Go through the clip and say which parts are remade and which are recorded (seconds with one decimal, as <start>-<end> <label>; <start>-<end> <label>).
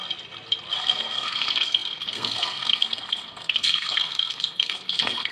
0.0-0.8 recorded; 0.8-5.3 remade